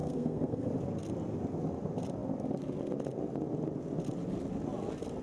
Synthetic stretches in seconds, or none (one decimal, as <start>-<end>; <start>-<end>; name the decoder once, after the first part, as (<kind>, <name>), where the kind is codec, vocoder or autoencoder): 0.0-0.7 (codec, SNAC)